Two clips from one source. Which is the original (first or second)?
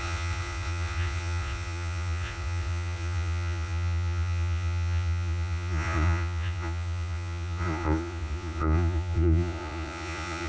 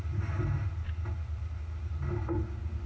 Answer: second